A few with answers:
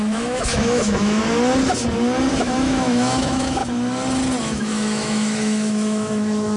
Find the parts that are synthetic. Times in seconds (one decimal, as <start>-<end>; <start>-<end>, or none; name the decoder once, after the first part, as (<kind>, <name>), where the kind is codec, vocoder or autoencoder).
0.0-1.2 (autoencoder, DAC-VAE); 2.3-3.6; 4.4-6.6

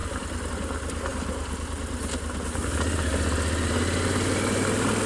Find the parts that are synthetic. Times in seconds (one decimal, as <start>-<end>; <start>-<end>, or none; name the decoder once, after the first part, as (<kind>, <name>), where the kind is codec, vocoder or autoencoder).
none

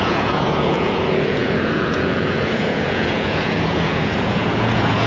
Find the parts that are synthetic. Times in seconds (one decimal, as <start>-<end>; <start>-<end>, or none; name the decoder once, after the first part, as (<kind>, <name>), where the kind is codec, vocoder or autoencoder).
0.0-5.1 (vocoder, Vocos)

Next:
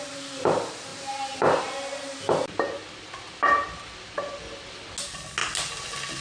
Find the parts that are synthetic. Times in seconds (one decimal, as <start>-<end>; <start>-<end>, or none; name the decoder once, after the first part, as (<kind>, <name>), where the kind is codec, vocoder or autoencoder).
none

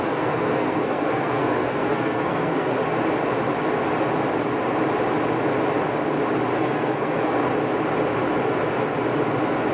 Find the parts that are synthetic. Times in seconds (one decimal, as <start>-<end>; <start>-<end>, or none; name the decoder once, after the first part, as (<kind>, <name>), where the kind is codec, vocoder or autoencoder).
0.0-2.7 (codec, SNAC); 6.6-7.4